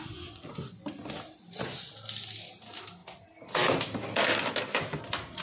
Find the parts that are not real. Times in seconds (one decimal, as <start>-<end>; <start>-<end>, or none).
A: none